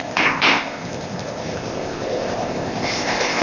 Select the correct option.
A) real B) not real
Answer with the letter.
B